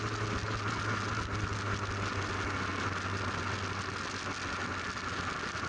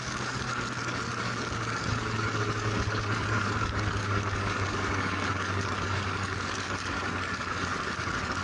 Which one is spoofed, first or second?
second